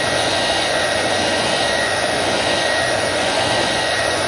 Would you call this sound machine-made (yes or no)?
yes